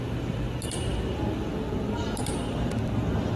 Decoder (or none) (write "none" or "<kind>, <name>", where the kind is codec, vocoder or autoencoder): none